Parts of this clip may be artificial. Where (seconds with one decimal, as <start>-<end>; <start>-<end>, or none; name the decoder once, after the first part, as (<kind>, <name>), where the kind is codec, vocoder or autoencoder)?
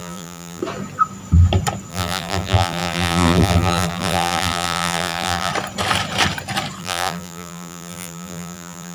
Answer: 0.0-0.6 (vocoder, BigVGAN v2); 1.9-5.5; 6.8-8.9